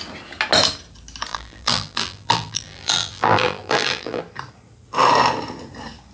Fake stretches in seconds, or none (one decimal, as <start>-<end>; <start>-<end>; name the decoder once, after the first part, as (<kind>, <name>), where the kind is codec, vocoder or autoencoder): 1.3-4.2 (vocoder, BigVGAN v2)